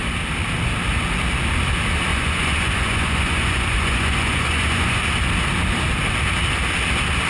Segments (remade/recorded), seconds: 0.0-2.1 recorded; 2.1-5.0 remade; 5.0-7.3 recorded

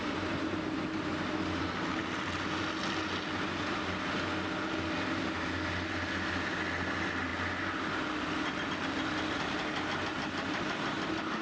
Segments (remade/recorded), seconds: 0.0-11.4 recorded

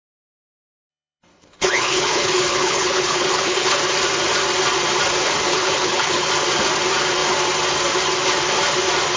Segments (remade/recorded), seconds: 0.0-0.9 recorded; 0.9-3.8 remade; 3.8-5.5 recorded; 5.5-6.3 remade; 6.3-9.2 recorded

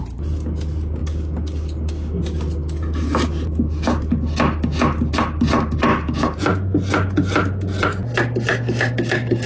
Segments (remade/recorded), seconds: 0.0-1.0 recorded; 1.0-2.2 remade; 2.2-5.9 recorded; 5.9-6.4 remade; 6.4-8.5 recorded; 8.5-9.5 remade

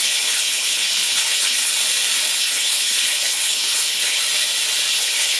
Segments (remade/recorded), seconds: 0.0-1.7 remade; 1.7-2.4 recorded; 2.4-4.2 remade; 4.2-4.9 recorded; 4.9-5.4 remade

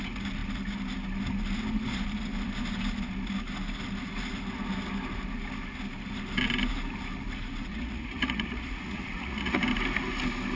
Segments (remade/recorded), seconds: 0.0-7.7 recorded; 7.7-9.6 remade; 9.6-10.6 recorded

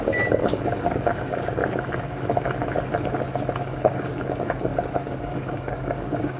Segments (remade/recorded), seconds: 0.0-1.6 remade; 1.6-3.6 recorded; 3.6-6.4 remade

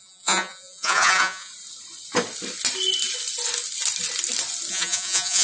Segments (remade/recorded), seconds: 0.0-1.5 remade; 1.5-4.7 recorded; 4.7-5.4 remade